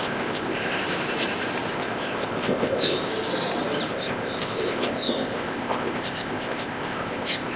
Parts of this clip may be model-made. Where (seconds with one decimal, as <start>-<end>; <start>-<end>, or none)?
0.0-0.8; 1.7-3.1; 3.9-7.6